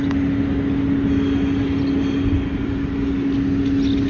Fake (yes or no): no